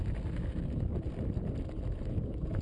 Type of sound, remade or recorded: recorded